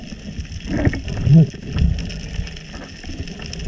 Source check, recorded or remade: recorded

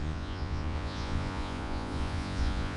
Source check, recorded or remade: remade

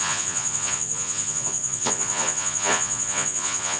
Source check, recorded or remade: remade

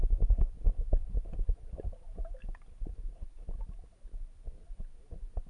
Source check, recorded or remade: recorded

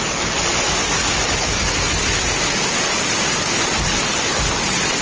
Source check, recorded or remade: recorded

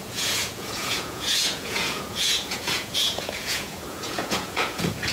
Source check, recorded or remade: remade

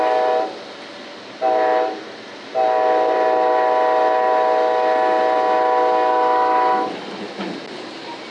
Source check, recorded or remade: recorded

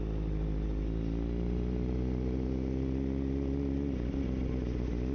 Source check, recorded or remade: recorded